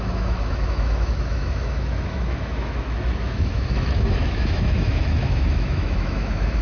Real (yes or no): no